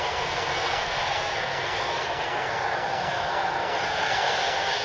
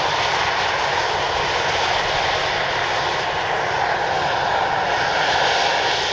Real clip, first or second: second